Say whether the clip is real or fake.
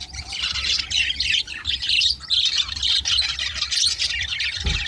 real